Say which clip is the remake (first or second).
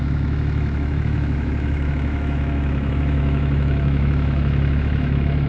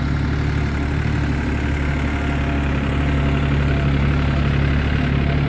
first